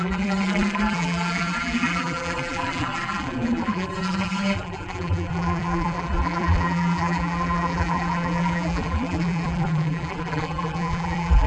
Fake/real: fake